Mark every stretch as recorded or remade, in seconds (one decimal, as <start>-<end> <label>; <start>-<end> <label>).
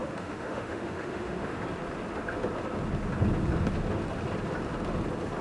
0.0-1.6 remade; 1.6-5.4 recorded